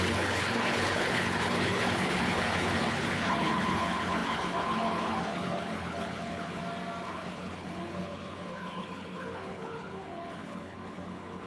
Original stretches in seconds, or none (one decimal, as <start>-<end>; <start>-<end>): 6.6-7.1